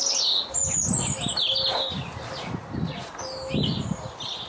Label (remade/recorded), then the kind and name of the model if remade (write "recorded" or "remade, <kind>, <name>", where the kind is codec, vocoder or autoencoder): recorded